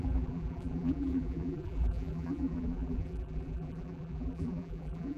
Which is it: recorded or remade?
remade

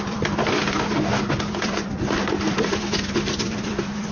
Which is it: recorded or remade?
remade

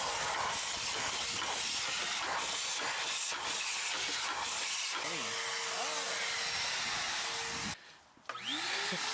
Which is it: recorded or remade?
recorded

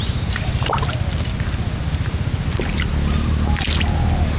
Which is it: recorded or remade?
recorded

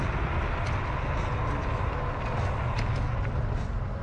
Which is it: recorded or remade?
recorded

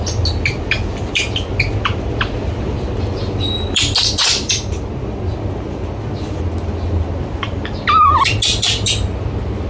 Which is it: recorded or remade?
recorded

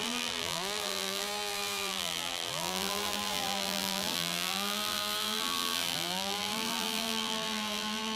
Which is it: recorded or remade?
remade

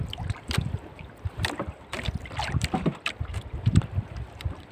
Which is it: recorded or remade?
remade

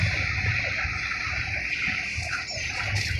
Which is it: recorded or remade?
remade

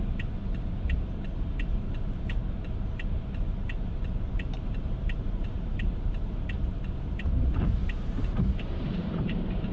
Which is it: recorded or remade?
remade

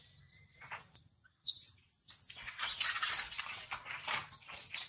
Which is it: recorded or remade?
remade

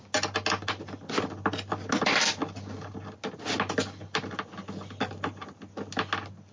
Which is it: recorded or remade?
recorded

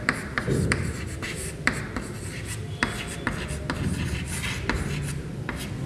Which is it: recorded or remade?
remade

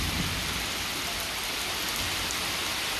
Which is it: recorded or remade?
recorded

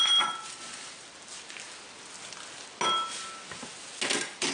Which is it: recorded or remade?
recorded